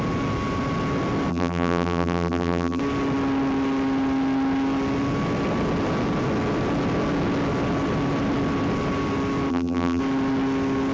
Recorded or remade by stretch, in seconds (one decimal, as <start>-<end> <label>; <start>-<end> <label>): 0.0-1.3 recorded; 1.3-2.8 remade; 2.8-9.5 recorded; 9.5-10.0 remade; 10.0-10.9 recorded